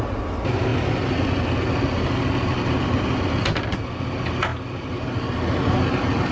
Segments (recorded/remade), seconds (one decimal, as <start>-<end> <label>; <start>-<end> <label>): 0.0-6.3 recorded